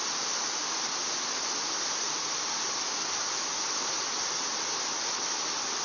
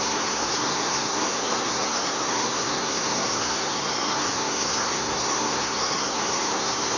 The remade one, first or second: second